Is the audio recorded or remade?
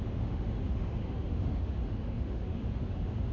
remade